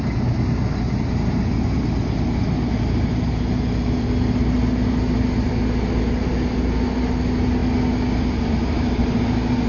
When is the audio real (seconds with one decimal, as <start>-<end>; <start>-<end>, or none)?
0.0-9.7